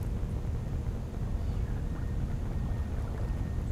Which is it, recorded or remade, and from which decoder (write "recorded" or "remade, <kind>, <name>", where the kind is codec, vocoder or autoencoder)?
recorded